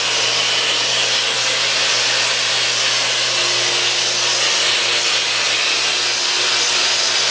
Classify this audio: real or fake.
real